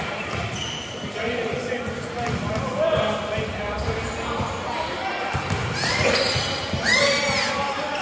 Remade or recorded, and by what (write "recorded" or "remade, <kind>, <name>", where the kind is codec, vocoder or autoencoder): recorded